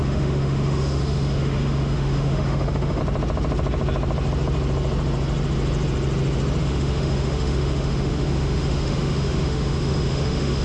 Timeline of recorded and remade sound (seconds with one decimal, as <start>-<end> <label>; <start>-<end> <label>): 0.0-3.0 remade; 3.0-6.6 recorded; 6.6-10.6 remade